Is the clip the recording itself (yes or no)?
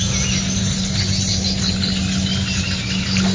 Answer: yes